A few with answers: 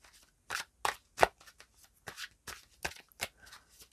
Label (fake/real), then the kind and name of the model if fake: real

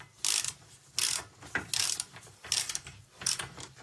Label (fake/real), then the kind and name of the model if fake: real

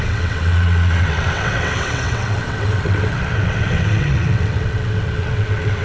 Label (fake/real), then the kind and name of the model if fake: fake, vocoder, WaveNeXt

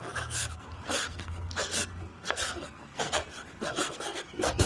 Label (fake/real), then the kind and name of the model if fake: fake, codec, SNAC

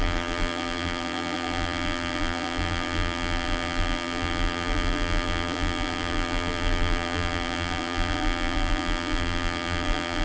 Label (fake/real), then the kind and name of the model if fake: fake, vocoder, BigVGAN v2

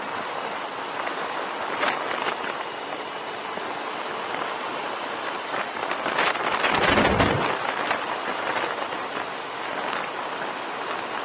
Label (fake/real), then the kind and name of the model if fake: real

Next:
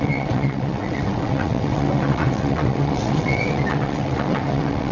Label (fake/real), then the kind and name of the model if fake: fake, vocoder, WaveNeXt